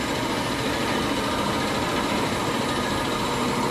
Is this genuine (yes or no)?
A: yes